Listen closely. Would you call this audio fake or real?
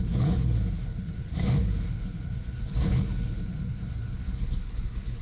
fake